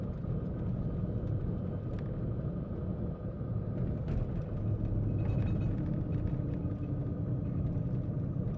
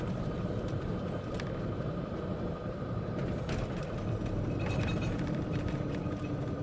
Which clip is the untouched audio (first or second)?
first